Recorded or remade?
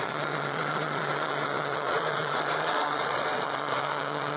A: remade